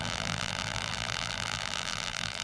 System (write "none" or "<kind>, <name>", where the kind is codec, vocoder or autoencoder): vocoder, BigVGAN v2